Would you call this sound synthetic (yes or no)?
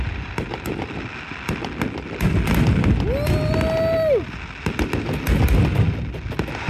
no